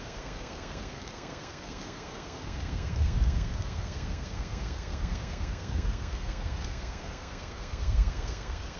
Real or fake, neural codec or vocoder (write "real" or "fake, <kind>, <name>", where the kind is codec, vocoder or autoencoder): fake, codec, SNAC